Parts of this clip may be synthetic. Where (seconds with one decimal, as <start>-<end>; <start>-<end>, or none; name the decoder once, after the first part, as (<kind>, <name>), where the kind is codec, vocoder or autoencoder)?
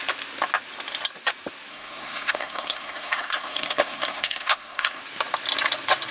1.7-5.0 (codec, SNAC)